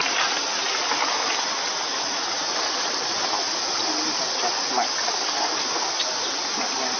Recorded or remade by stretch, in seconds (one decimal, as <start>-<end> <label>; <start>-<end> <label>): 0.0-7.0 recorded

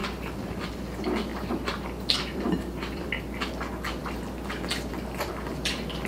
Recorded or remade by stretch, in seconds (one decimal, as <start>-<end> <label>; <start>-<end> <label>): 0.0-0.7 remade; 0.7-1.3 recorded; 1.3-3.5 remade; 3.5-4.0 recorded; 4.0-6.1 remade